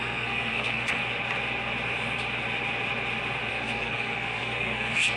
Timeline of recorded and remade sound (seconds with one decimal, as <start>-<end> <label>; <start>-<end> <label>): 0.0-1.0 remade; 1.0-3.5 recorded; 3.5-5.2 remade